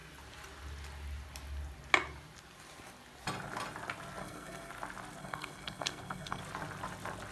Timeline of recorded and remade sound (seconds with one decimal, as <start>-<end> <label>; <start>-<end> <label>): 0.0-4.2 recorded; 4.2-4.7 remade; 4.7-5.2 recorded; 5.2-6.4 remade; 6.4-7.3 recorded